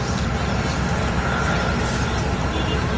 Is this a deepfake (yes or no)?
no